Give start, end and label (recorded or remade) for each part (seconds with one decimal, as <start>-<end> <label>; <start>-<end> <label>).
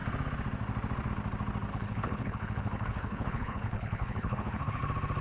0.0-1.7 recorded; 1.7-4.8 remade; 4.8-5.2 recorded